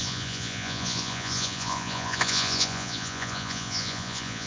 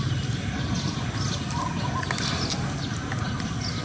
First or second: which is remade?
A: first